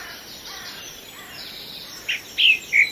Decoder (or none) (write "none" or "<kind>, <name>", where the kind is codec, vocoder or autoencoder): none